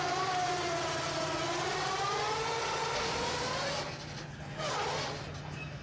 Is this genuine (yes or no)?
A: yes